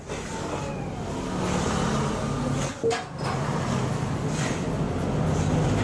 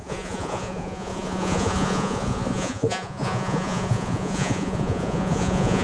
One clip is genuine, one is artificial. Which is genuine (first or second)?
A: first